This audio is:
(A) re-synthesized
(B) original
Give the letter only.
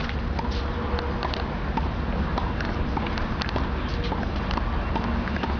B